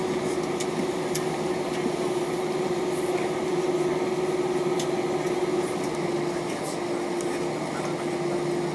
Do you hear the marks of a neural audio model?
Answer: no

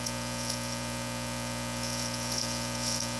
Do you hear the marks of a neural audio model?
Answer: yes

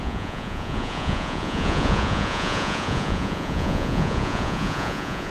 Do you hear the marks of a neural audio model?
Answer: yes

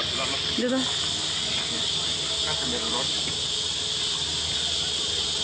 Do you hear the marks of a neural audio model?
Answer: no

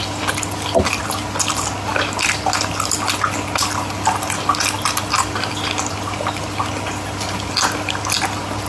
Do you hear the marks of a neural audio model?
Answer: no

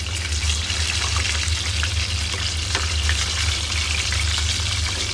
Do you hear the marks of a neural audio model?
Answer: no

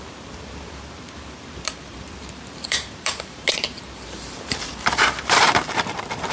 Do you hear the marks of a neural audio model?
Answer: yes